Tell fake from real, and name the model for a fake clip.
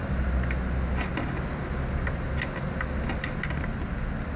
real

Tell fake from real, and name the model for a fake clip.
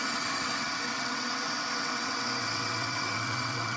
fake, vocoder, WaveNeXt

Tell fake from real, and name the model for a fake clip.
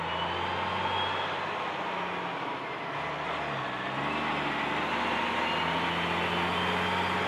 real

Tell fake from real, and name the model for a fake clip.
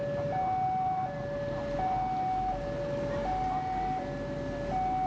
real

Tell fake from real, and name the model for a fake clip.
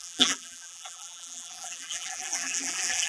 fake, vocoder, BigVGAN v2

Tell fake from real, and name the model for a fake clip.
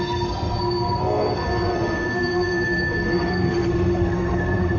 fake, codec, SNAC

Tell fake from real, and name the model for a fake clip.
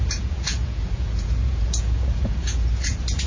fake, vocoder, Vocos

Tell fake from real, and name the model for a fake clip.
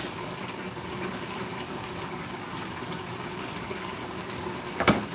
fake, codec, DAC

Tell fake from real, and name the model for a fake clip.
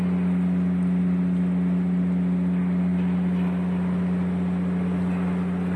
real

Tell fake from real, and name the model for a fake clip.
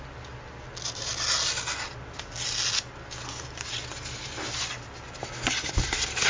real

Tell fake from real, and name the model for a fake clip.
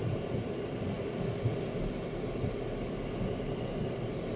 real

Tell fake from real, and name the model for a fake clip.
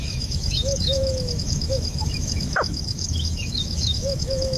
fake, autoencoder, DAC-VAE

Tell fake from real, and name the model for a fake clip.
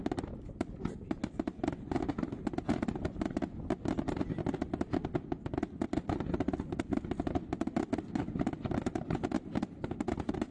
real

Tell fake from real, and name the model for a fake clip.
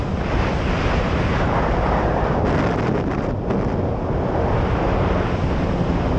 real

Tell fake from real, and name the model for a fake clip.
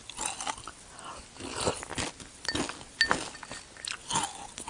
real